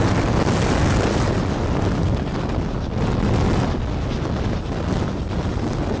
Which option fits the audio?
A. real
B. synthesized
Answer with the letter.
A